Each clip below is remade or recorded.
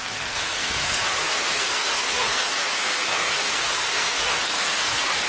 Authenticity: remade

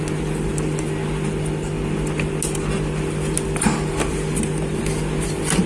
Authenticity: recorded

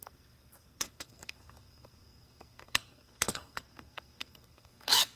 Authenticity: remade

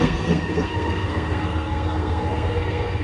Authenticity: remade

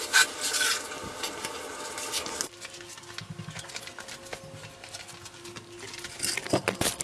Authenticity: recorded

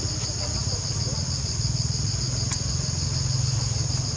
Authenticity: recorded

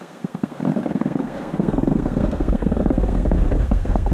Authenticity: remade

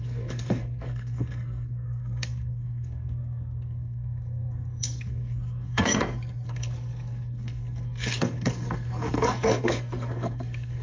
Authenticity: remade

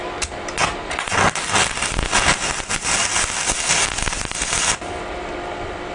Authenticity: recorded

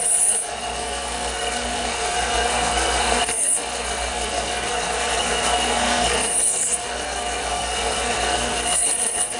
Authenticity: remade